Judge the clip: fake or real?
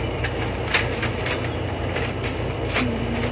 real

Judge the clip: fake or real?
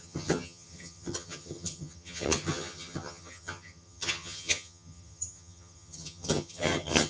fake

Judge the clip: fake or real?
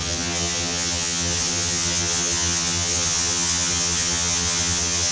fake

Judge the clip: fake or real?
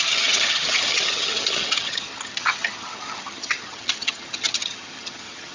fake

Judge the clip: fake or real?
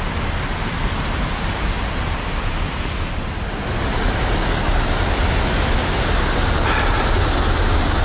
real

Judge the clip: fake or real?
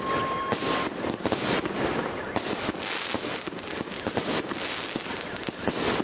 real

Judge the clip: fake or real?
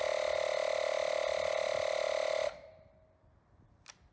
real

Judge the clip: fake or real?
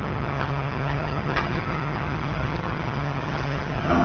fake